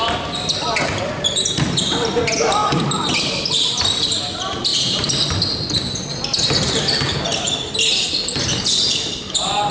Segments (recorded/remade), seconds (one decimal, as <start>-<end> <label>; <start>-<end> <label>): 0.0-9.7 recorded